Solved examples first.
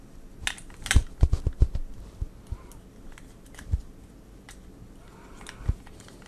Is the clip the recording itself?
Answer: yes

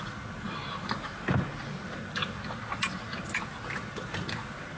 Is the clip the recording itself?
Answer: yes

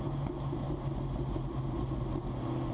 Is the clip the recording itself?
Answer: yes